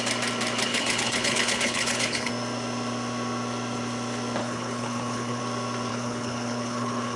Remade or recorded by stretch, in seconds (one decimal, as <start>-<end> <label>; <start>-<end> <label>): 0.0-0.7 recorded; 0.7-2.3 remade; 2.3-4.4 recorded; 4.4-5.4 remade; 5.4-5.9 recorded; 5.9-7.2 remade